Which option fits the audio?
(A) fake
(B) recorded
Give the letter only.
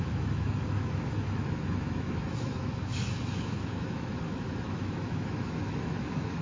A